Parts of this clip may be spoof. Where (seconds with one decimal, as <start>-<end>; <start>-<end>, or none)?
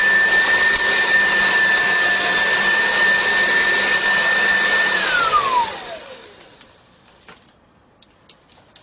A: none